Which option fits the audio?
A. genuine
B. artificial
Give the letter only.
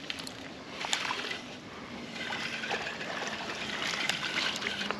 B